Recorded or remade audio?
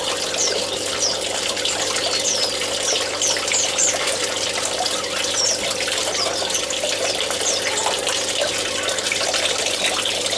recorded